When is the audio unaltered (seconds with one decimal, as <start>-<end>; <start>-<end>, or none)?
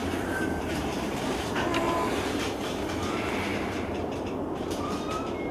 1.8-3.5; 4.4-5.5